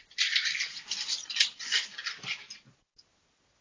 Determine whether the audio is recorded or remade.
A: recorded